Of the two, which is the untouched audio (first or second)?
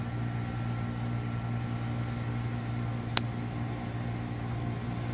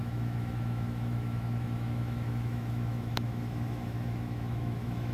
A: first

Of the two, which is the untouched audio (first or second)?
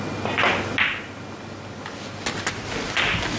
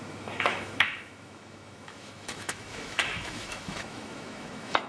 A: first